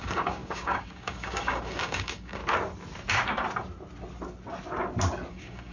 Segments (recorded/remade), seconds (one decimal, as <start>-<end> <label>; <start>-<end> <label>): 0.0-2.4 remade; 2.4-5.3 recorded; 5.3-5.7 remade